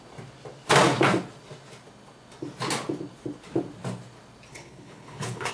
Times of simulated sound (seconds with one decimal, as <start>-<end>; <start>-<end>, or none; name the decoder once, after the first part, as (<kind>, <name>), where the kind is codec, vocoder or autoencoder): 4.5-5.5 (codec, HILCodec)